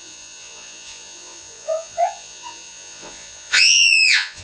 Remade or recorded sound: remade